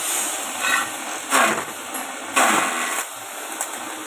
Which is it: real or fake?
real